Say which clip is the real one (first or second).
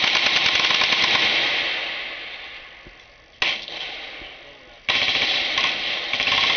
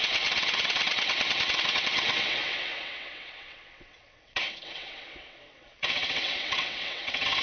first